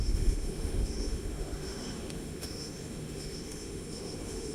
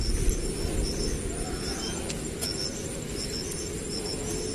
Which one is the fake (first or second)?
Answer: first